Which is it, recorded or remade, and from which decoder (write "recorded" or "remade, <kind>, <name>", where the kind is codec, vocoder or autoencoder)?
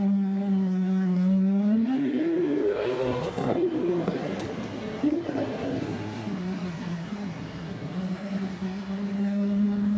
remade, codec, SNAC